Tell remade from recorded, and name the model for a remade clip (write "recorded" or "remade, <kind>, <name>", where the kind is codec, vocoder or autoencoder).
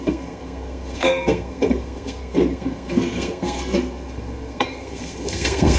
remade, codec, SNAC